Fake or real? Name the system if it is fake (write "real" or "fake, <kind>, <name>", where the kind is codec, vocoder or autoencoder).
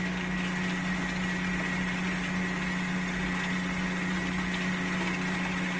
real